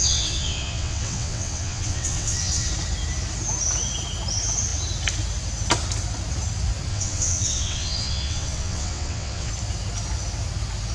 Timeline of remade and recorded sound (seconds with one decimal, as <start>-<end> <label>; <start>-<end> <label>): 0.0-2.7 remade; 2.7-6.9 recorded; 6.9-9.5 remade; 9.5-10.9 recorded